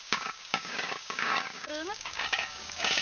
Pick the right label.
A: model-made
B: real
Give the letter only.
A